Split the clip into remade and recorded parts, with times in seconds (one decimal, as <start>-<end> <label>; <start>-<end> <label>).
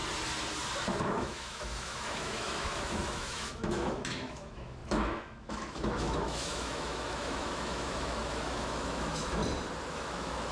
0.0-1.0 recorded; 1.0-9.4 remade; 9.4-9.9 recorded; 9.9-10.5 remade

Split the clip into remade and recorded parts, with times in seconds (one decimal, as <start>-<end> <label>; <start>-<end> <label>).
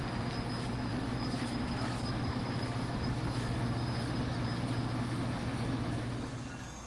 0.0-0.9 recorded; 0.9-3.6 remade; 3.6-5.4 recorded; 5.4-6.2 remade; 6.2-6.9 recorded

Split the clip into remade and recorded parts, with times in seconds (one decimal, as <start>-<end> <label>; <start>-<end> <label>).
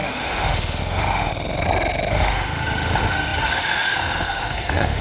0.0-1.3 remade; 1.3-2.1 recorded; 2.1-5.0 remade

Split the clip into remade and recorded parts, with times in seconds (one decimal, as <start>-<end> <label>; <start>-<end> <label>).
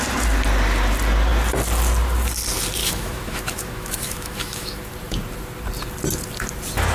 0.0-2.8 recorded; 2.8-4.9 remade; 4.9-6.9 recorded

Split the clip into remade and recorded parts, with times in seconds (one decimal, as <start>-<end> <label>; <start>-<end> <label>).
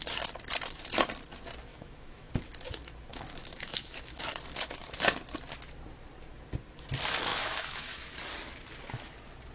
0.0-1.7 recorded; 1.7-2.3 remade; 2.3-3.1 recorded; 3.1-4.2 remade; 4.2-7.3 recorded; 7.3-8.1 remade; 8.1-9.5 recorded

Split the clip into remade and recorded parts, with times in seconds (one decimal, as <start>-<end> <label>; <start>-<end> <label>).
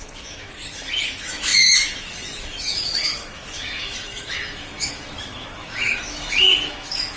0.0-7.2 remade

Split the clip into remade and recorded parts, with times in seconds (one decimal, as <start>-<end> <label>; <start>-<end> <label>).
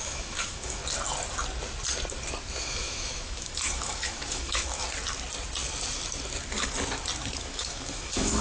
0.0-0.8 remade; 0.8-2.6 recorded; 2.6-4.8 remade; 4.8-7.4 recorded; 7.4-8.4 remade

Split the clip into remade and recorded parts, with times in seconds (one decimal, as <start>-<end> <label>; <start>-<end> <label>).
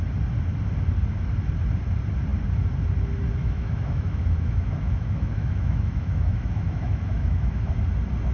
0.0-3.4 recorded; 3.4-7.7 remade; 7.7-8.3 recorded